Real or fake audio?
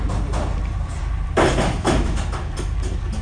real